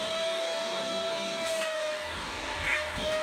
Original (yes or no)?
no